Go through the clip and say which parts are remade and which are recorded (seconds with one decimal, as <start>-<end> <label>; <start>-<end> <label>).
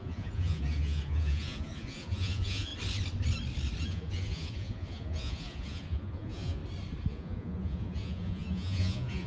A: 0.0-2.7 remade; 2.7-3.8 recorded; 3.8-6.6 remade; 6.6-7.1 recorded; 7.1-9.3 remade